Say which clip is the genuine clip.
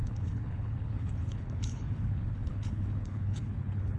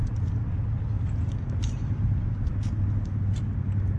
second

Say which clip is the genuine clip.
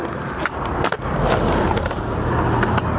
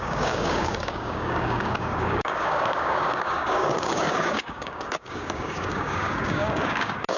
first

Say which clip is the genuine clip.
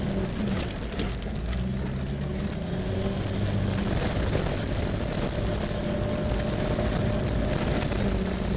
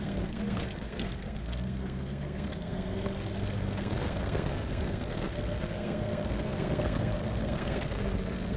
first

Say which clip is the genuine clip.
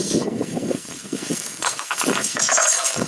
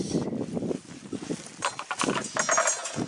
second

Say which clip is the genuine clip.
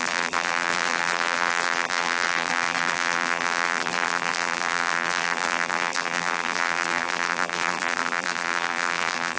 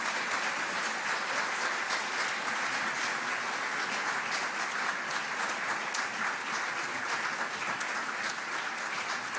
second